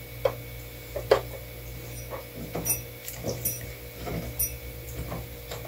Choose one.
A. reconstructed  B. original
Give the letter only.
B